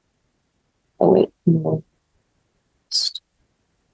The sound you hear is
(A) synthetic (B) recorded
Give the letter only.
B